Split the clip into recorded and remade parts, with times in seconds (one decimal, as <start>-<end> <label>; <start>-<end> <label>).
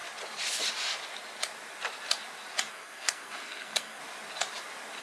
0.0-2.7 recorded; 2.7-4.0 remade; 4.0-5.0 recorded